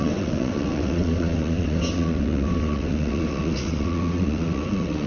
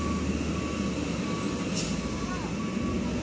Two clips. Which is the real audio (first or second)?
second